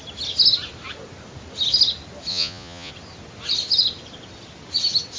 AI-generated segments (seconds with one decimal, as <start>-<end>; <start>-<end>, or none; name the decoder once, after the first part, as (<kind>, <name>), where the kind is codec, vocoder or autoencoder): 2.3-2.9 (vocoder, Vocos)